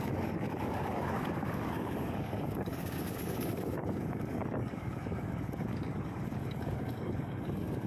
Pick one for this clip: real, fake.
fake